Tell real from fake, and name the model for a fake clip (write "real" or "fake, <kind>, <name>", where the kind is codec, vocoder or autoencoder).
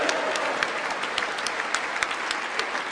real